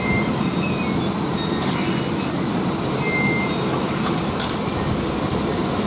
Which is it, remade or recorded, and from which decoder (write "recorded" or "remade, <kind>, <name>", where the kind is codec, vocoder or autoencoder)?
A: recorded